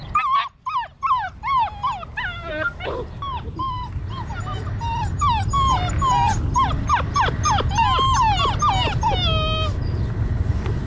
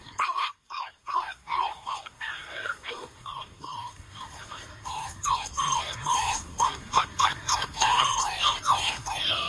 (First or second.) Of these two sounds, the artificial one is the second